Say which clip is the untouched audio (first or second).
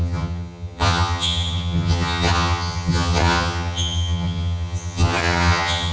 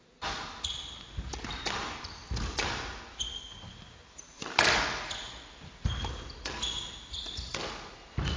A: second